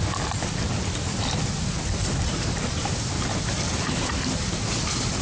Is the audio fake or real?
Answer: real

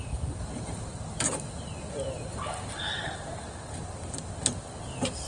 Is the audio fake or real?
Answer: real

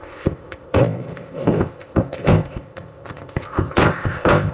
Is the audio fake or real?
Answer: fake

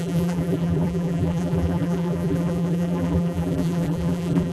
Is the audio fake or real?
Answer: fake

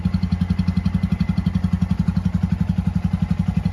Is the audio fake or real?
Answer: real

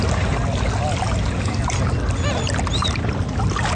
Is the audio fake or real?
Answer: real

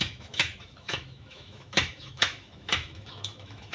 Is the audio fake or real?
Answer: fake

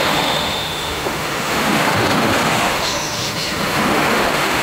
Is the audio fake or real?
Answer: fake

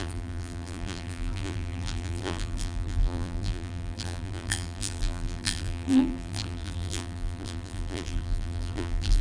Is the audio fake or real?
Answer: fake